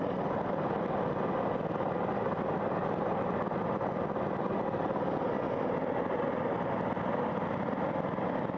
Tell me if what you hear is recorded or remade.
recorded